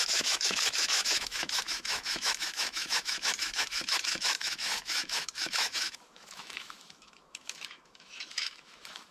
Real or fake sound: fake